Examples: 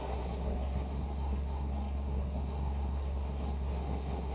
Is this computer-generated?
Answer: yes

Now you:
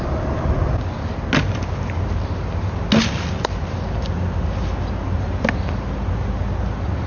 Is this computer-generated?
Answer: no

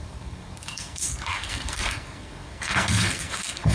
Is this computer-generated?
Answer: yes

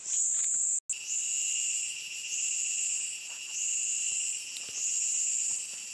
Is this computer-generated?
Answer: no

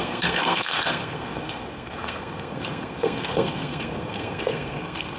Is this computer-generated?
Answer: yes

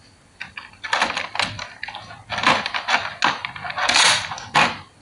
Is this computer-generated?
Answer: no